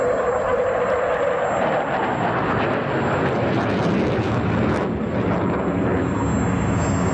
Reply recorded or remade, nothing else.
recorded